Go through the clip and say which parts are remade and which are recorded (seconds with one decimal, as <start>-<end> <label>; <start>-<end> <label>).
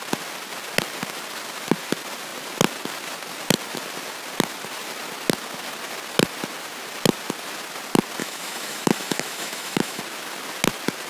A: 0.0-8.2 recorded; 8.2-10.0 remade; 10.0-11.1 recorded